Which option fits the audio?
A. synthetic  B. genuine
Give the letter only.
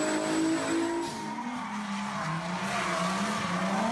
B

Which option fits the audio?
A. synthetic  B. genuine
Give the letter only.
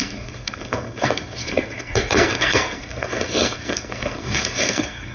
A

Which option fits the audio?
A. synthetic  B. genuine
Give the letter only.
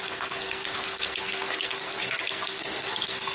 A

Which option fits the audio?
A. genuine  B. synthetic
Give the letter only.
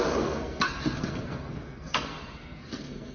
B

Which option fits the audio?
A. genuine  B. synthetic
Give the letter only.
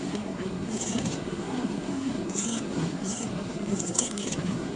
B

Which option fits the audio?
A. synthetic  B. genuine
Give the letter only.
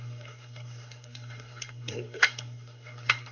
A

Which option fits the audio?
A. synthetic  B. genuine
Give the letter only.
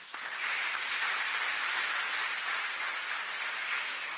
B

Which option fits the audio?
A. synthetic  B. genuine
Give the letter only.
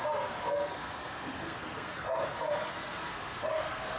A